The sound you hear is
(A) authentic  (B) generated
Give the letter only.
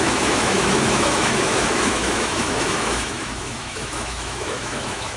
B